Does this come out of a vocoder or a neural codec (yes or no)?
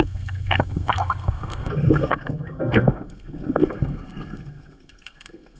yes